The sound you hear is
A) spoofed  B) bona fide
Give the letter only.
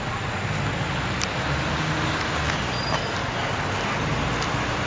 B